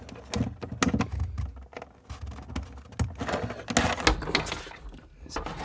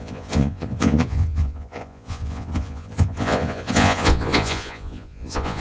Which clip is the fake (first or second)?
second